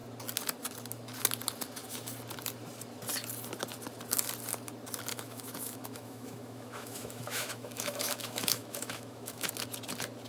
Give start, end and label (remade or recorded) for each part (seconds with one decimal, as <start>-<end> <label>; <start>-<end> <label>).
0.0-5.1 recorded; 5.1-9.5 remade; 9.5-10.3 recorded